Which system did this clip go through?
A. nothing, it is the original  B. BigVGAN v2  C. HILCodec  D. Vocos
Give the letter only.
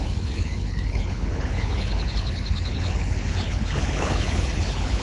C